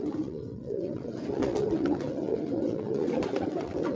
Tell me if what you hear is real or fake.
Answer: fake